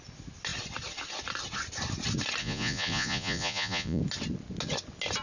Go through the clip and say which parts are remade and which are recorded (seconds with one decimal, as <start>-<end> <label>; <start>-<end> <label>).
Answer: 0.0-2.4 recorded; 2.4-4.0 remade; 4.0-5.2 recorded